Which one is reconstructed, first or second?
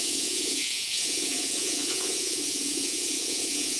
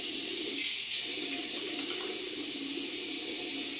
first